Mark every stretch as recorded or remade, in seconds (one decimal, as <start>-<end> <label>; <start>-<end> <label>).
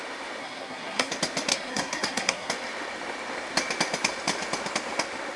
0.0-0.4 recorded; 0.4-1.1 remade; 1.1-1.5 recorded; 1.5-2.5 remade; 2.5-5.4 recorded